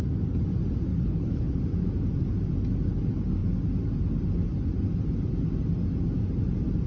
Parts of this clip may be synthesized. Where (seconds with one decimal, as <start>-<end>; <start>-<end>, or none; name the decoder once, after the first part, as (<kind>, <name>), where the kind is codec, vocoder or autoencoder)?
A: 0.9-1.6 (codec, HILCodec)